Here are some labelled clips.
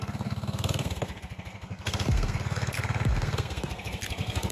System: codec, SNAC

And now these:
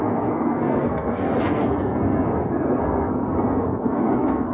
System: codec, SNAC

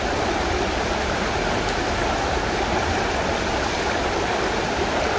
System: none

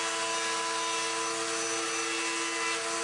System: none